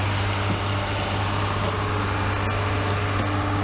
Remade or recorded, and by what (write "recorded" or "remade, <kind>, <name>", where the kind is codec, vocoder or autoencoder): recorded